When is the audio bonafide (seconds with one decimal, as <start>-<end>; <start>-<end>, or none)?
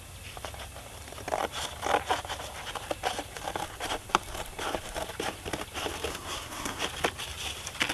0.0-6.1; 6.8-7.9